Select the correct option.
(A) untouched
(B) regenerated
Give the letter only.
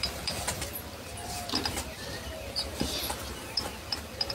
B